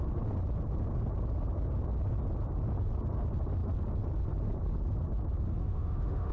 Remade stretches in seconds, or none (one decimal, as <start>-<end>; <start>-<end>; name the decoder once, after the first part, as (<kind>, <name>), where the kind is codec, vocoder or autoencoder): 5.6-6.3 (autoencoder, DAC-VAE)